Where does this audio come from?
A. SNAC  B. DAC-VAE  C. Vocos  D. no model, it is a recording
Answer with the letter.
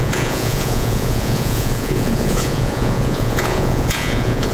C